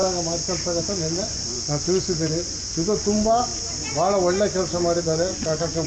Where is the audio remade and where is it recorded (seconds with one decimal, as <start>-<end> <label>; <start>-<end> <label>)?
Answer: 0.0-0.8 recorded; 0.8-3.5 remade; 3.5-5.0 recorded; 5.0-5.9 remade